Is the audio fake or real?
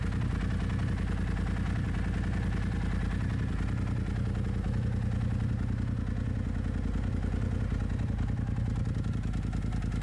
real